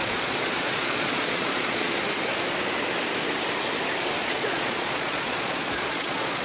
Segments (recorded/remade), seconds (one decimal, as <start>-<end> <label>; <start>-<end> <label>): 0.0-2.0 remade; 2.0-4.2 recorded; 4.2-6.4 remade